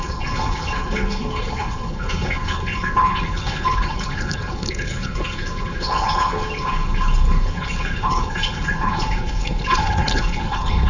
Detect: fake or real fake